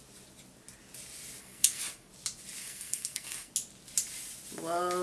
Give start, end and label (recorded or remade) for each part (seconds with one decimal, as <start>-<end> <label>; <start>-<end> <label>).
0.0-1.4 recorded; 1.4-2.1 remade; 2.1-2.6 recorded; 2.6-3.5 remade; 3.5-5.0 recorded